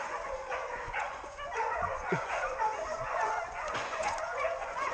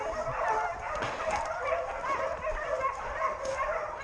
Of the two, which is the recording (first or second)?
second